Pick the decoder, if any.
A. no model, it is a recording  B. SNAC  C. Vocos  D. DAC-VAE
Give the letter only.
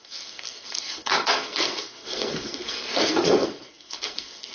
B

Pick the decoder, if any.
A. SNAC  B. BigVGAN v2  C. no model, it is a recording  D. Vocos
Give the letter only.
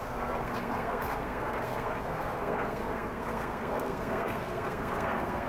A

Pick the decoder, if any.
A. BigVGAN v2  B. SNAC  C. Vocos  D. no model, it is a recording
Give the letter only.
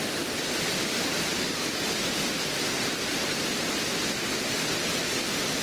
D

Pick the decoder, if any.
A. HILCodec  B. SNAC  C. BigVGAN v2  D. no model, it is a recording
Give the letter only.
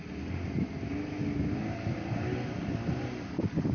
D